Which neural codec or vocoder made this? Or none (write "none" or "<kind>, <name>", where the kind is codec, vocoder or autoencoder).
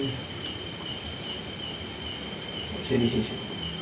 none